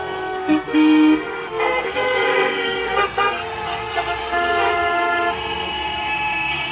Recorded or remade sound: remade